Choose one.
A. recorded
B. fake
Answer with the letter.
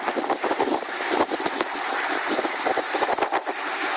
A